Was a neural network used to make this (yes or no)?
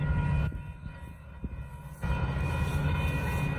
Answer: no